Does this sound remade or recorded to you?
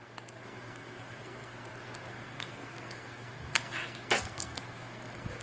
remade